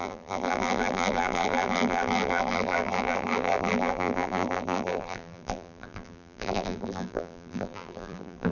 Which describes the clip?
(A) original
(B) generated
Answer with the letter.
B